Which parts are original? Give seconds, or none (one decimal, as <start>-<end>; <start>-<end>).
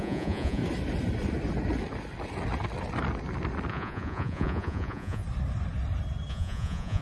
0.6-3.7; 5.2-6.3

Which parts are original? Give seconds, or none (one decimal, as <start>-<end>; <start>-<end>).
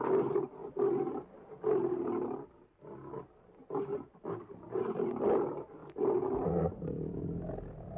5.8-7.4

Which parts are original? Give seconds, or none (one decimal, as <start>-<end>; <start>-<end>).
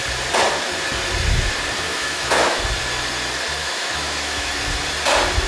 0.0-1.9; 2.6-3.6; 4.5-5.5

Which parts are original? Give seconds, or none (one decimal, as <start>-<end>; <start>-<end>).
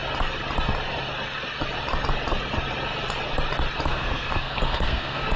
0.0-3.9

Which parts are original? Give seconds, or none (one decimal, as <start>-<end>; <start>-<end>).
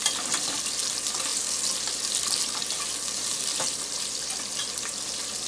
0.0-5.5